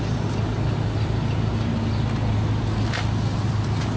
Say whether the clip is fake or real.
real